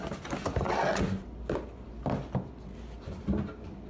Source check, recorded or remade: recorded